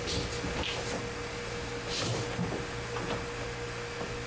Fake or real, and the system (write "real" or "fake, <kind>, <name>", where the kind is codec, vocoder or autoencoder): real